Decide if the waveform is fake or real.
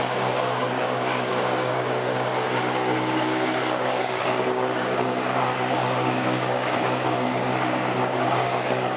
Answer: fake